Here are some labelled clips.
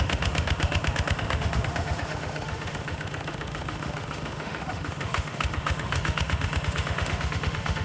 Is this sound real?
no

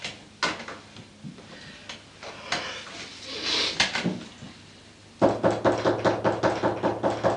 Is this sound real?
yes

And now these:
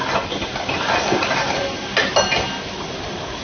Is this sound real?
yes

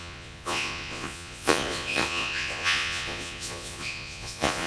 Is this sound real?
no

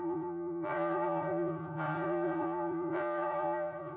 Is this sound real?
no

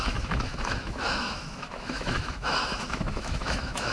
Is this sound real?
no